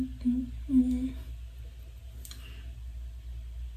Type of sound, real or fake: real